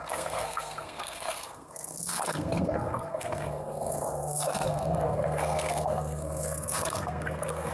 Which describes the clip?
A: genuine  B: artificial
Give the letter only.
B